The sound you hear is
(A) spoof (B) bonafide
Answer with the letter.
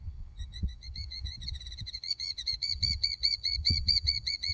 A